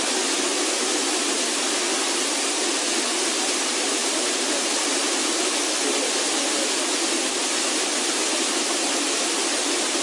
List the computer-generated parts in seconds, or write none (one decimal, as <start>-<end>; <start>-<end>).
none